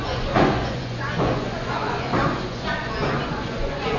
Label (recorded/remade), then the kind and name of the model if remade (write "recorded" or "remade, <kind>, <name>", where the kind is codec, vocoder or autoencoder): remade, vocoder, Vocos